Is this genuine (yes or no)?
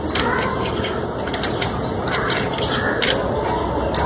yes